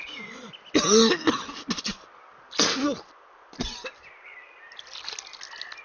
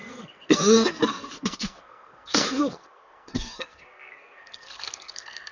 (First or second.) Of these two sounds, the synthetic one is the second